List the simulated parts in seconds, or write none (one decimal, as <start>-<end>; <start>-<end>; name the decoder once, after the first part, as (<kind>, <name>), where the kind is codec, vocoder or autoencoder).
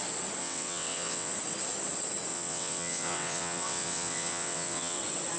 0.4-1.3 (vocoder, WaveNeXt); 2.3-5.0